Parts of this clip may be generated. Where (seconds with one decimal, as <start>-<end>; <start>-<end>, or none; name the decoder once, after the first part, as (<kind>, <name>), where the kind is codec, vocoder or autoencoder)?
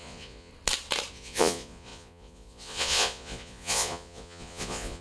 0.0-0.5 (vocoder, Vocos); 1.1-5.0